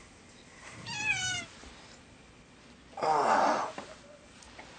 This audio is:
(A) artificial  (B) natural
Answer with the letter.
B